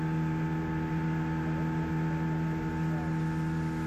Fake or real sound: real